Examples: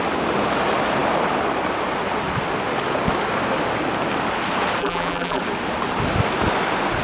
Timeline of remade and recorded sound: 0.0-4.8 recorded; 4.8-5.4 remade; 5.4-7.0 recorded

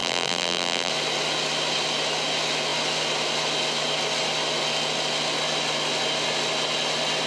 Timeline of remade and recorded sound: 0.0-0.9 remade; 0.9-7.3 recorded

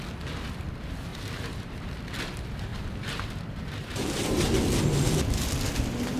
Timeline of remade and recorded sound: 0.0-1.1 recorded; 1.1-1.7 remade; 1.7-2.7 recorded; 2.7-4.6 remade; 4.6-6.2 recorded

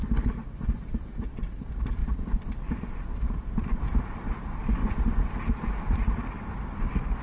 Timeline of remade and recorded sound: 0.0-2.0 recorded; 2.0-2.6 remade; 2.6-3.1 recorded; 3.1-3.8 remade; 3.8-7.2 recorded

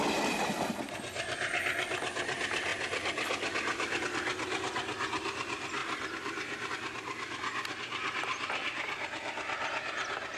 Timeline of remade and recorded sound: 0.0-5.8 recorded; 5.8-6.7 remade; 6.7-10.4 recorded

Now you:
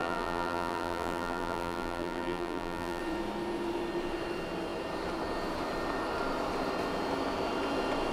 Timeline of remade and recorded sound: 0.0-3.0 remade; 3.0-8.1 recorded